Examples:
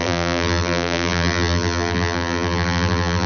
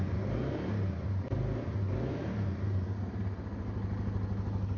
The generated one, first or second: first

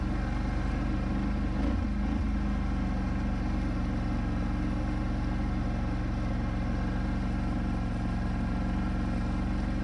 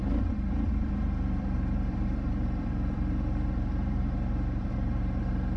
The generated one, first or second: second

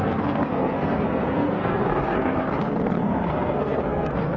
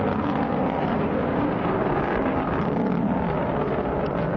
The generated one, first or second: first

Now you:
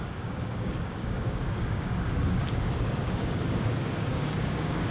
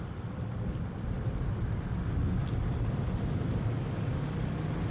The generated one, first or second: first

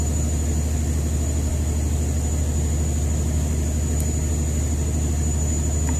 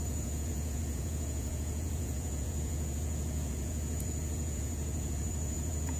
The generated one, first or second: second